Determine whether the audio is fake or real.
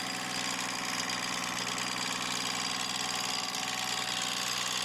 real